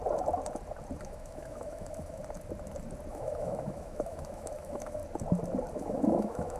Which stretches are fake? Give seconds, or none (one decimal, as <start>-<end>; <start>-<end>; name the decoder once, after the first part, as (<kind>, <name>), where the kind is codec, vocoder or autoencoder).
1.0-2.2 (autoencoder, DAC-VAE); 3.1-5.0; 5.7-6.6